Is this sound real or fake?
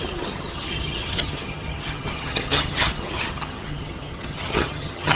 fake